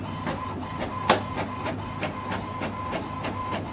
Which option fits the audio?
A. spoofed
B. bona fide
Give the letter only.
B